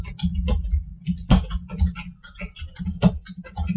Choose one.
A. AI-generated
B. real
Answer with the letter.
B